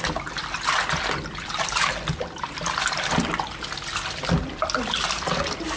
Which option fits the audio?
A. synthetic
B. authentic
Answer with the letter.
B